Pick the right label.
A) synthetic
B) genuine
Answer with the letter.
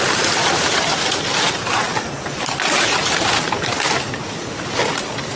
B